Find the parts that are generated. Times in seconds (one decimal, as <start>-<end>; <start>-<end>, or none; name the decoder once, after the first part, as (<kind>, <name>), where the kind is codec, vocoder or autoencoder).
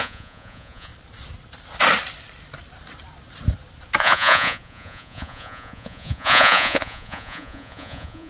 0.0-0.9 (vocoder, Vocos); 4.0-8.3